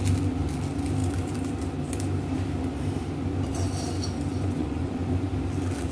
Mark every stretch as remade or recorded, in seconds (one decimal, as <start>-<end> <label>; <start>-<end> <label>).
0.0-4.3 recorded; 4.3-5.3 remade; 5.3-5.9 recorded